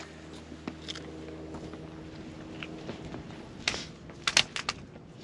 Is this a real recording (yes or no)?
yes